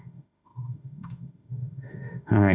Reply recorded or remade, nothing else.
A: remade